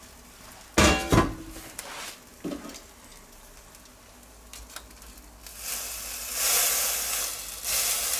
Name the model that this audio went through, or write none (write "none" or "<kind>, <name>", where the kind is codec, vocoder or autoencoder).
none